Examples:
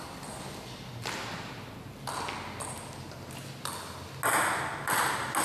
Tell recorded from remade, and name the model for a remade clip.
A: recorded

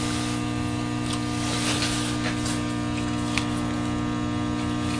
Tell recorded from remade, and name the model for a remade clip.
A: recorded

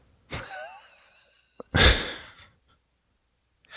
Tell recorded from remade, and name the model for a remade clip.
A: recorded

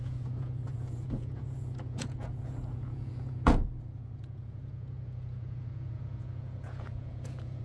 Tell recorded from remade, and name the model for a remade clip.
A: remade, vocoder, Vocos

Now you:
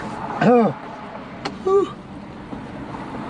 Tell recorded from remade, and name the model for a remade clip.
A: remade, vocoder, BigVGAN v2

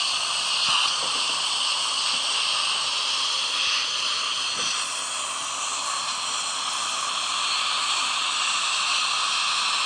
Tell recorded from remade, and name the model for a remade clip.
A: recorded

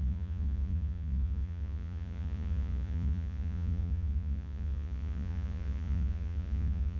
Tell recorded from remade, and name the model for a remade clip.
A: remade, vocoder, Vocos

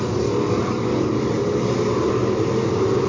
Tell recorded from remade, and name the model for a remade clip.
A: recorded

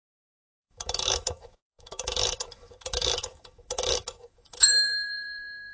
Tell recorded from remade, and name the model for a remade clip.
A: remade, autoencoder, DAC-VAE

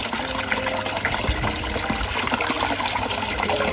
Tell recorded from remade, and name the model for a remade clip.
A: recorded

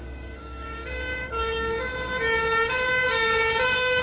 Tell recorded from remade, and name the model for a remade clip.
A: remade, codec, DAC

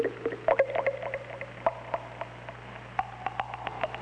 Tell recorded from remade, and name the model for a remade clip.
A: recorded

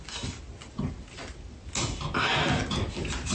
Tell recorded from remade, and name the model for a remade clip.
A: recorded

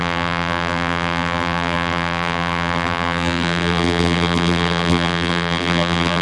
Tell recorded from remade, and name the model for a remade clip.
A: remade, vocoder, BigVGAN v2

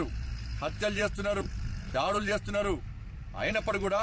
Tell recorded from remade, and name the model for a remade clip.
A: remade, vocoder, BigVGAN v2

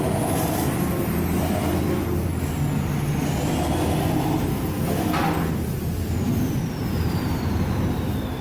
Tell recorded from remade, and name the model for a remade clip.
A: recorded